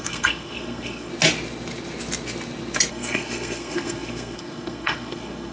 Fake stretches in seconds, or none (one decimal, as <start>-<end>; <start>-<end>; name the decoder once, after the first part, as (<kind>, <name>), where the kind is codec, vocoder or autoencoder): 0.0-1.1 (codec, SNAC); 2.9-5.5